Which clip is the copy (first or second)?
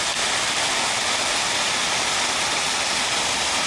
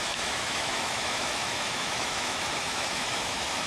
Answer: second